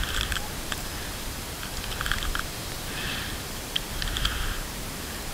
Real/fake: fake